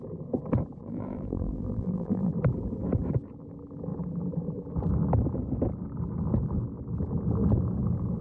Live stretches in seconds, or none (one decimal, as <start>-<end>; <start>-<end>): 0.0-0.8; 2.3-8.2